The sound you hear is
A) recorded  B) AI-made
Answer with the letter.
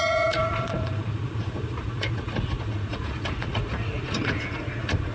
B